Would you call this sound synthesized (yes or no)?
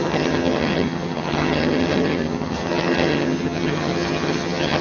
yes